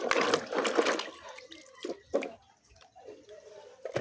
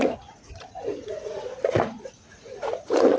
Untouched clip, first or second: first